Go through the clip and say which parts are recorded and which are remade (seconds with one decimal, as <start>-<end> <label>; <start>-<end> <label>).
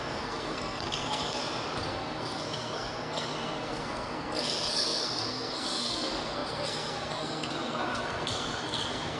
0.0-1.4 remade; 1.4-1.9 recorded; 1.9-9.2 remade